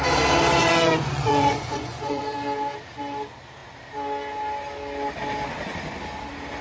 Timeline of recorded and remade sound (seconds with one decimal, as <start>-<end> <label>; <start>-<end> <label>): 0.0-0.6 recorded; 0.6-2.2 remade; 2.2-6.6 recorded